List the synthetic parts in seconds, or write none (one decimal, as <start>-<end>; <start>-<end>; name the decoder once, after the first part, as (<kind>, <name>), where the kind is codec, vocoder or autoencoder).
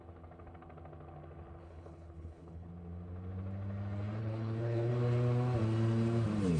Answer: 1.6-2.7 (codec, HILCodec); 4.2-4.9